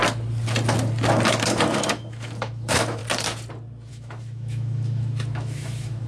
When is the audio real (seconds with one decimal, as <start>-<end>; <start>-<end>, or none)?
0.0-1.3; 3.0-3.9